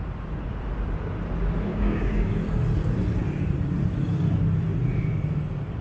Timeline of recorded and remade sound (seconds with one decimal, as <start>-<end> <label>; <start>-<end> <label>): 0.0-1.7 recorded; 1.7-2.3 remade; 2.3-5.8 recorded